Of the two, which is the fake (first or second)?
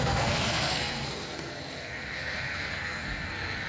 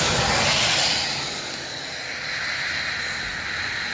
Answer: first